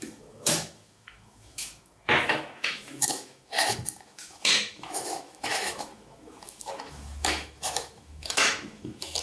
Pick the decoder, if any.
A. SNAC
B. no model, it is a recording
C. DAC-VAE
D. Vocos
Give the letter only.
C